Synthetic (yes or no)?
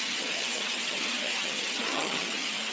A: yes